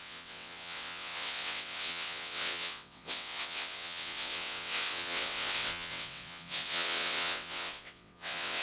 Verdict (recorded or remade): remade